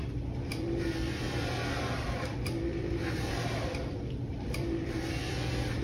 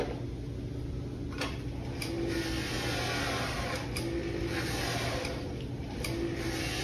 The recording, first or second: second